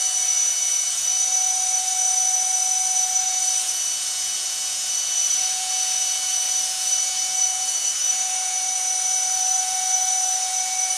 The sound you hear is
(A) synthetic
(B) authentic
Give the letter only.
A